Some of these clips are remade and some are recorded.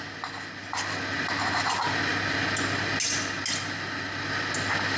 recorded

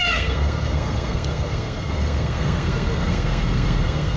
remade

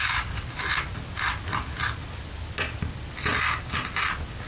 recorded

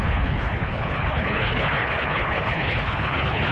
remade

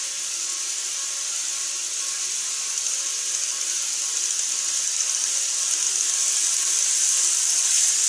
recorded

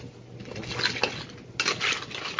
recorded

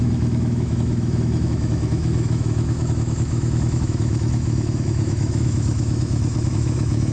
remade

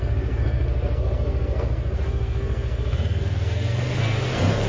remade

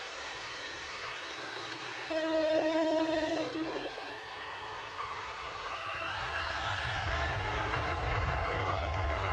remade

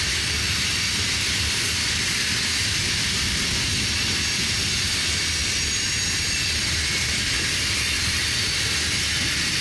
recorded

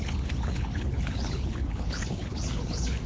remade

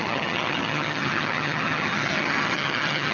remade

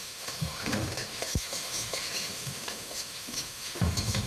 remade